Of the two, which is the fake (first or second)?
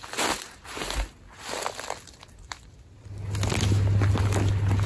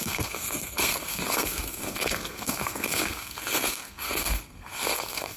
second